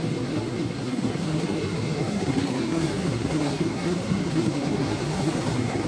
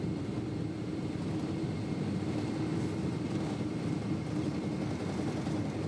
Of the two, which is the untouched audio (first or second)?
second